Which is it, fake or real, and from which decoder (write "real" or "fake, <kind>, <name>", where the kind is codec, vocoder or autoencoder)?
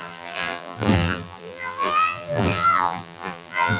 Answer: fake, vocoder, BigVGAN v2